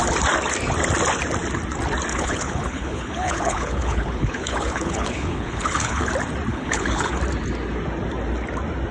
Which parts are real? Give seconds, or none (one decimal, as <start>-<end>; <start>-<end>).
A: 0.0-2.1; 6.1-6.5; 7.2-8.9